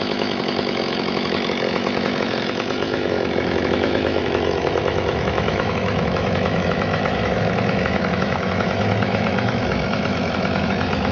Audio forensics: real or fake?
fake